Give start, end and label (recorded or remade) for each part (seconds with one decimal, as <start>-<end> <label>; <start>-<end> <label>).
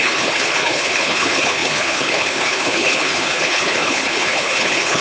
0.0-5.0 remade